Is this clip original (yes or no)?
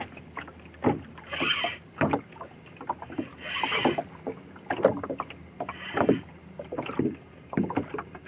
yes